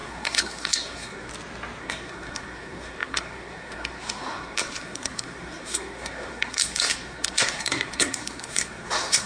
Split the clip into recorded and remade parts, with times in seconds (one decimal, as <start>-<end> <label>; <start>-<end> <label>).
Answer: 0.0-1.3 remade; 1.3-1.8 recorded; 1.8-9.3 remade